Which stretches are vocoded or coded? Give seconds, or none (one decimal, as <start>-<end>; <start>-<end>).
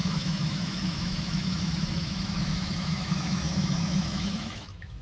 0.0-5.0